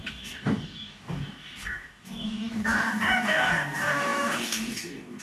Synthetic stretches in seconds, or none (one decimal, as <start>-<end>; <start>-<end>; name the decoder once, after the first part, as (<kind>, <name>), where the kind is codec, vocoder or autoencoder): 0.0-5.2 (codec, DAC)